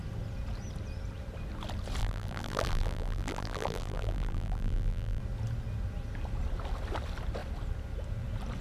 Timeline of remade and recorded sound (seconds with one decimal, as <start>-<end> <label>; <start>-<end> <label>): 0.0-2.0 recorded; 2.0-5.2 remade; 5.2-8.6 recorded